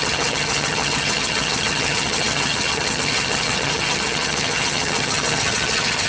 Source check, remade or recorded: remade